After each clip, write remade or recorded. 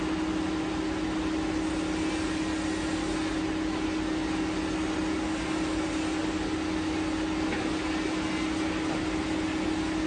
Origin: recorded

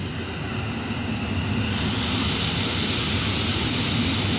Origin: recorded